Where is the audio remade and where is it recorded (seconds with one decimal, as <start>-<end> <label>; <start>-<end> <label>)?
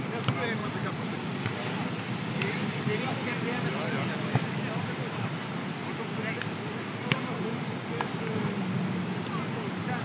0.0-0.6 recorded; 0.6-1.4 remade; 1.4-10.0 recorded